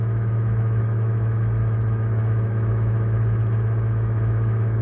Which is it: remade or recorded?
remade